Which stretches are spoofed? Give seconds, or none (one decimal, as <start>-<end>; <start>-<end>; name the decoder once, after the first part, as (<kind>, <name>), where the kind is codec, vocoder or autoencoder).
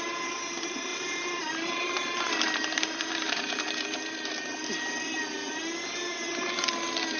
0.9-5.1 (vocoder, BigVGAN v2)